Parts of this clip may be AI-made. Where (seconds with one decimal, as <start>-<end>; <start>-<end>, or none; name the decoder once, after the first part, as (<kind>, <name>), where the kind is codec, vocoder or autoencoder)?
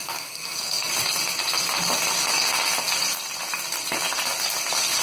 0.0-0.9 (codec, SNAC)